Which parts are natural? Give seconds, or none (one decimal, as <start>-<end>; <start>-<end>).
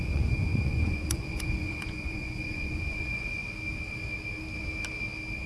3.4-5.5